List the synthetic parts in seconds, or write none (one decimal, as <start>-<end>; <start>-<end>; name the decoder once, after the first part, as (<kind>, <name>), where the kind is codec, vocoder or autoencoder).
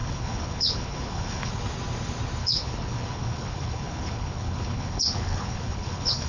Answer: 0.0-1.5 (codec, HILCodec); 2.4-6.3